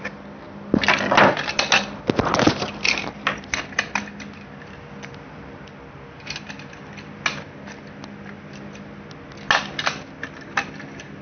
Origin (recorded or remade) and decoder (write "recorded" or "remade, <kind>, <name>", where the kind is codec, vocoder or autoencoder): recorded